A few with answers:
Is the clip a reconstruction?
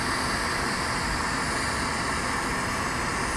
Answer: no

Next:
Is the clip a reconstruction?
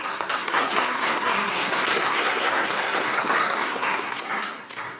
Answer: yes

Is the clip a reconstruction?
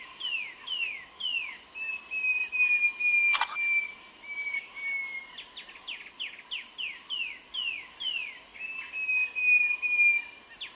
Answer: no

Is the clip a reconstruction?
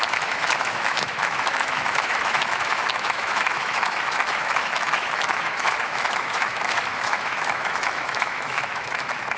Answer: yes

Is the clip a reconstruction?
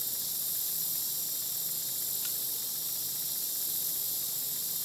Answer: no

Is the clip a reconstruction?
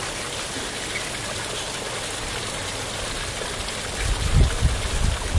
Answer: no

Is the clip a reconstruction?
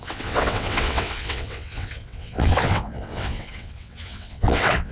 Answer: yes